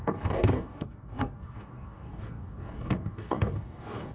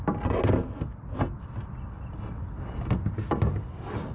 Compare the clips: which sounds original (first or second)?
second